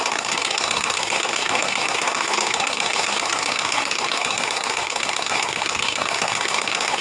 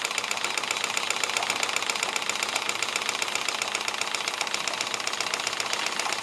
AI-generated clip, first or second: first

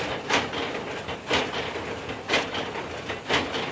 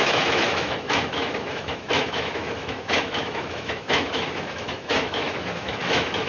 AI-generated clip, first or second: second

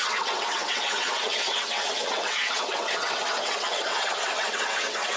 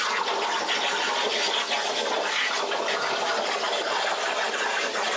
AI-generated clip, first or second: first